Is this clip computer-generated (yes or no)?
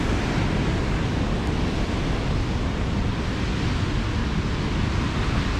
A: no